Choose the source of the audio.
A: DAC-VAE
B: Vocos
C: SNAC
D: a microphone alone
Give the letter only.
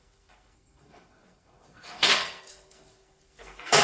C